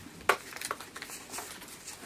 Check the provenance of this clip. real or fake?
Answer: real